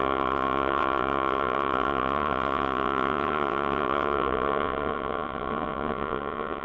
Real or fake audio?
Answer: fake